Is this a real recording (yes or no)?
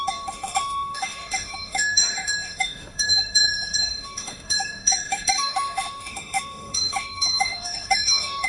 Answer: no